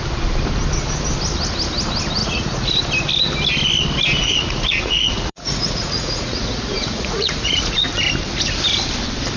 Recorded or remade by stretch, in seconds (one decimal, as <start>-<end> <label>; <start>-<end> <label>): 0.0-2.2 recorded; 2.2-2.8 remade; 2.8-4.2 recorded; 4.2-7.9 remade; 7.9-9.4 recorded